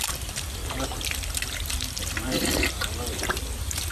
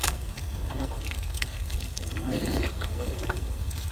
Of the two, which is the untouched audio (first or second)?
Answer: first